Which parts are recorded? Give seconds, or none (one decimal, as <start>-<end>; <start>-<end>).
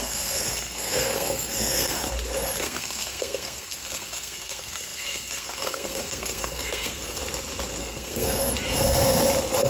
2.0-2.6; 7.2-7.8; 8.4-9.7